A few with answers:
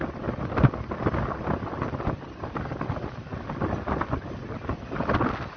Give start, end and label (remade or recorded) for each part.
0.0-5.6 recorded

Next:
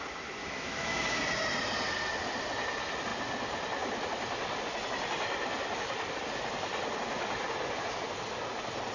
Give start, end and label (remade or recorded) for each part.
0.0-0.4 recorded; 0.4-1.0 remade; 1.0-8.9 recorded

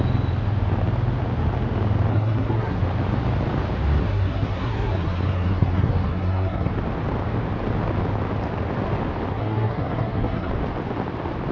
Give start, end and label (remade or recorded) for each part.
0.0-2.1 recorded; 2.1-2.8 remade; 2.8-4.0 recorded; 4.0-6.7 remade; 6.7-9.3 recorded; 9.3-10.5 remade; 10.5-11.5 recorded